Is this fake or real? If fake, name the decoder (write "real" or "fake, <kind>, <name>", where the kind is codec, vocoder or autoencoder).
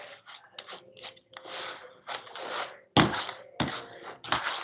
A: real